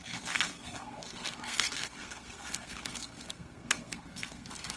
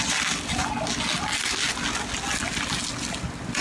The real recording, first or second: second